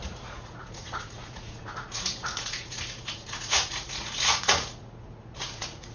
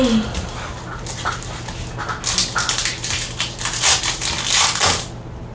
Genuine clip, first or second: second